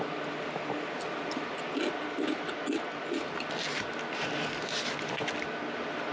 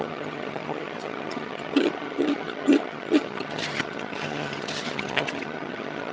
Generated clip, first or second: second